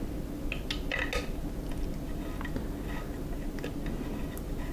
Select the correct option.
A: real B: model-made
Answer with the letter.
A